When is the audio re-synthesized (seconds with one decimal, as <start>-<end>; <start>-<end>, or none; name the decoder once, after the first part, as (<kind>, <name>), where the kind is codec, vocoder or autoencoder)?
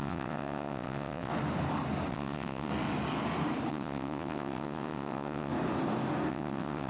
0.0-1.3 (vocoder, WaveNeXt); 2.1-2.7; 3.7-5.5; 6.3-6.9